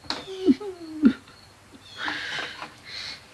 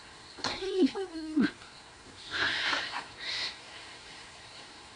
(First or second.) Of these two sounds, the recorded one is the first